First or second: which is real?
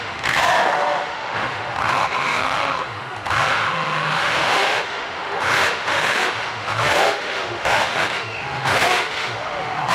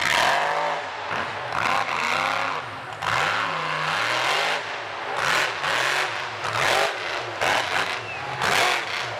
second